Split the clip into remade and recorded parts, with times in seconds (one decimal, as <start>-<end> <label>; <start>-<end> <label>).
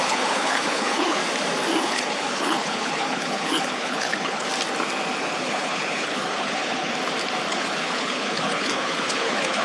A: 0.0-1.2 remade; 1.2-1.8 recorded; 1.8-4.5 remade; 4.5-5.2 recorded; 5.2-6.9 remade; 6.9-7.5 recorded; 7.5-9.6 remade